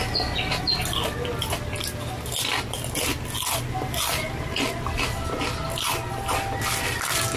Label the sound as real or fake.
real